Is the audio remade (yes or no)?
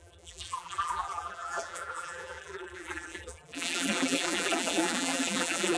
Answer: yes